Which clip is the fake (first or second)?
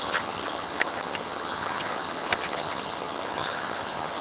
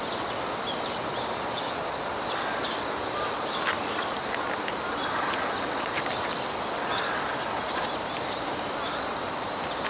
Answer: first